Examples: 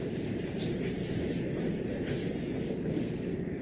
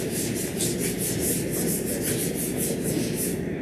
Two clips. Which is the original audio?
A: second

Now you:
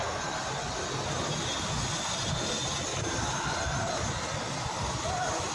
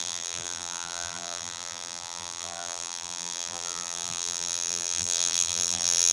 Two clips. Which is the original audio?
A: first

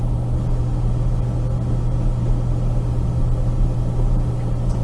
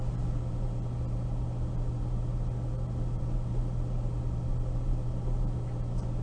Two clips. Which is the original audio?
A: first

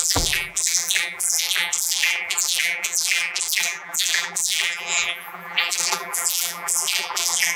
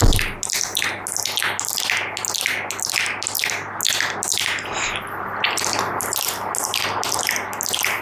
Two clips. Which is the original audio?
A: second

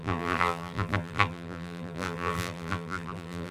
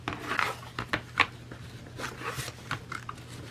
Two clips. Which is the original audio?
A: second